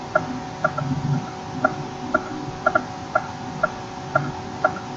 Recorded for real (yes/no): yes